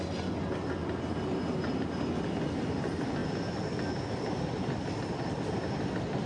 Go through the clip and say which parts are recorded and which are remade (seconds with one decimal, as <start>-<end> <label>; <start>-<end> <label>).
0.0-6.3 recorded